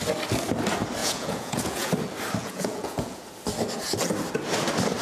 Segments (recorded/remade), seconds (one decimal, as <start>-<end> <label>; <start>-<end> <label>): 0.0-1.0 recorded; 1.0-1.9 remade; 1.9-2.4 recorded; 2.4-3.2 remade; 3.2-5.0 recorded